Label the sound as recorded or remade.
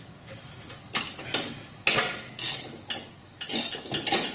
recorded